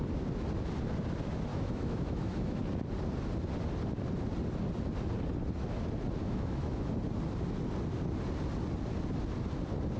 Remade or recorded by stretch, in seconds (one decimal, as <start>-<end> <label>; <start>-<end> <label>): 0.0-1.5 recorded; 1.5-2.6 remade; 2.6-6.2 recorded; 6.2-6.9 remade; 6.9-10.0 recorded